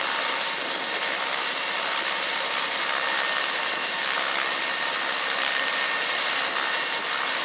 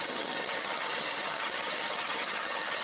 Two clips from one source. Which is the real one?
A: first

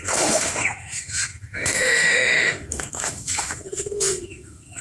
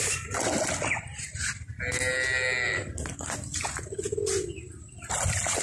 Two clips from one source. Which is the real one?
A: second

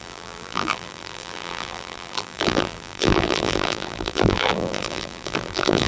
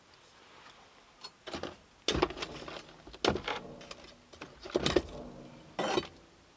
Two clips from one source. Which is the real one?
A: second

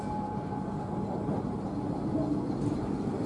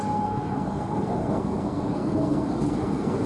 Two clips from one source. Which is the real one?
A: first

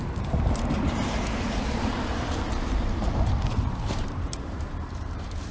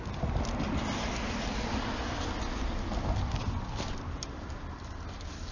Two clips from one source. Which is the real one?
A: second